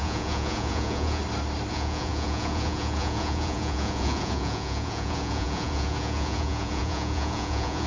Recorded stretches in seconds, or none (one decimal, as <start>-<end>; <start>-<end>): 1.2-1.7